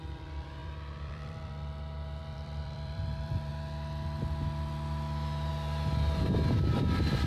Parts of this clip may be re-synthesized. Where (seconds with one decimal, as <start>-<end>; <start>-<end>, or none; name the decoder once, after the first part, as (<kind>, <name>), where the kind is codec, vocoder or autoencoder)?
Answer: 0.0-3.5 (vocoder, BigVGAN v2); 5.5-7.3